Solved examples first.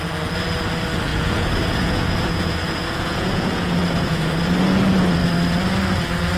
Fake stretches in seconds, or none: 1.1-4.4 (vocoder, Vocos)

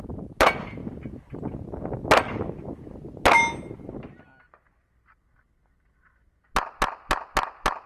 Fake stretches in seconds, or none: none

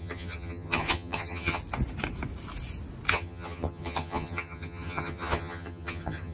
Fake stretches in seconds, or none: 0.0-1.6 (vocoder, HiFi-GAN); 3.1-6.3

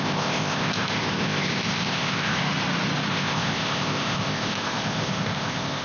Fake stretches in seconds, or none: 0.0-2.4 (codec, ZipCodec); 3.1-5.8

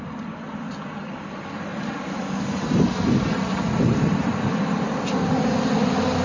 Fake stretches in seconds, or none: none

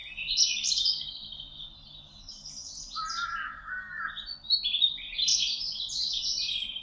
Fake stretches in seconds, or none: none

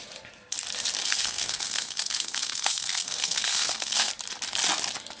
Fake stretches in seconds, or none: 1.0-4.1 (codec, SNAC)

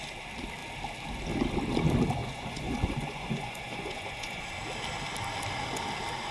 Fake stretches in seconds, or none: 2.2-4.5 (vocoder, Vocos)